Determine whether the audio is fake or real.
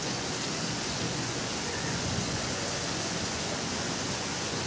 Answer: fake